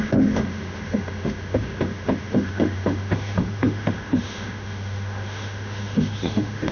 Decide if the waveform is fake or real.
fake